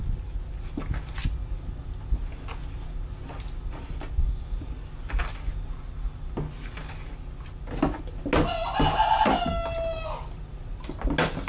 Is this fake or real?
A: real